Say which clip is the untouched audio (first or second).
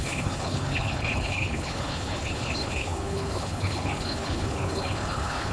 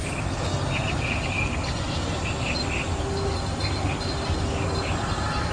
second